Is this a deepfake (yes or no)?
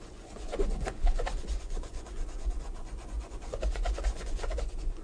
yes